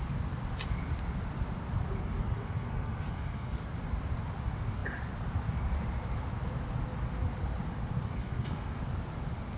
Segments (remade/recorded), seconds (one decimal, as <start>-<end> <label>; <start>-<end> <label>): 0.0-2.2 recorded; 2.2-3.6 remade; 3.6-8.2 recorded; 8.2-8.8 remade; 8.8-9.6 recorded